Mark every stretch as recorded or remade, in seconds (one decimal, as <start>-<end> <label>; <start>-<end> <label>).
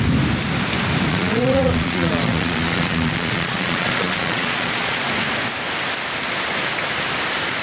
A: 0.0-1.1 recorded; 1.1-5.0 remade; 5.0-7.6 recorded